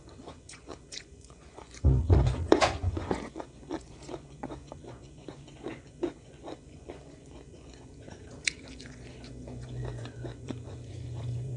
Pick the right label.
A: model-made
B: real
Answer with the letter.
A